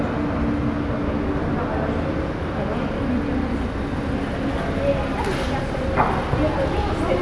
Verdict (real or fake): real